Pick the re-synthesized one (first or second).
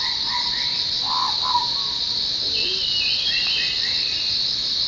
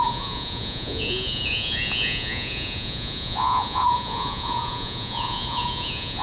second